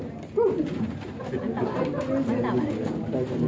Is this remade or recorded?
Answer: recorded